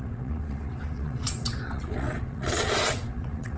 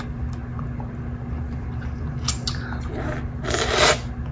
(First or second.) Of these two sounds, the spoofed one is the first